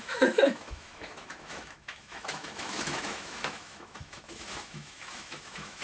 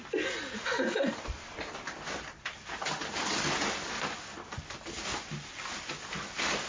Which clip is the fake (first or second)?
first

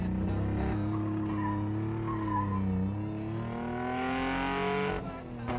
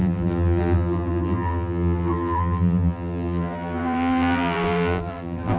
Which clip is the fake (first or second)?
second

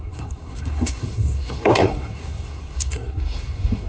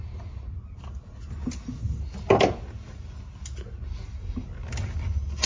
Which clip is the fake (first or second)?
first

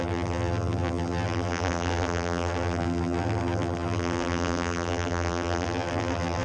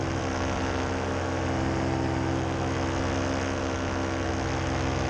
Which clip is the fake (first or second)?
first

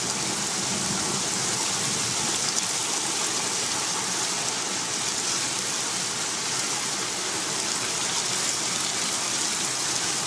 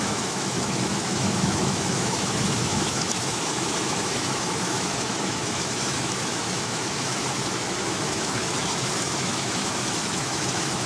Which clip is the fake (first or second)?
second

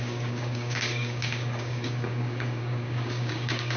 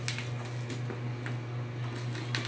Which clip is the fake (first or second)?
first